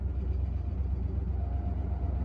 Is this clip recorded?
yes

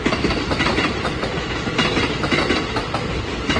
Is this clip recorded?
yes